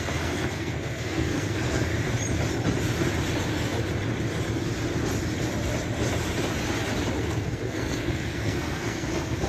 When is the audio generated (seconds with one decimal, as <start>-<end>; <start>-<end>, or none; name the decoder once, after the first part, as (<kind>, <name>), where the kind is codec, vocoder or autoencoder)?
0.0-1.9 (codec, SNAC); 7.2-9.5